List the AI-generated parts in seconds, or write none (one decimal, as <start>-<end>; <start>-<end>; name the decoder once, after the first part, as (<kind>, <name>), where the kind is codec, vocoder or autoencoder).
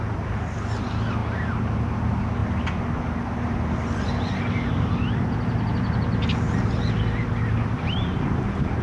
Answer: none